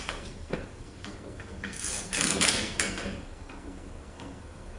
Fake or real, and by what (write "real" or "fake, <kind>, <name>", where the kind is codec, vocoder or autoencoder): fake, codec, SNAC